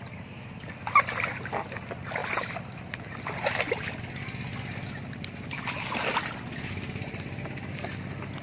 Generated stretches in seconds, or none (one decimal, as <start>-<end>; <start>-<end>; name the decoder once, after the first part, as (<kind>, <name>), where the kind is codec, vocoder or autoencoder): none